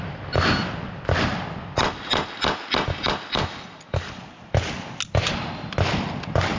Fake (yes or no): no